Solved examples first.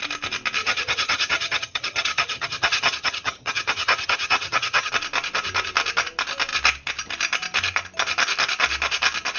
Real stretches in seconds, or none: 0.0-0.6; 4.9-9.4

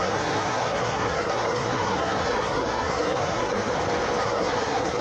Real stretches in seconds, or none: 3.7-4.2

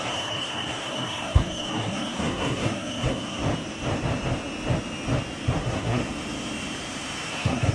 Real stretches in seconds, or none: 3.4-5.6; 6.0-7.3